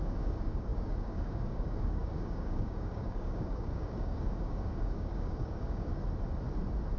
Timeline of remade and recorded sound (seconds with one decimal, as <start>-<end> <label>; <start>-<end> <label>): 0.0-6.0 remade; 6.0-7.0 recorded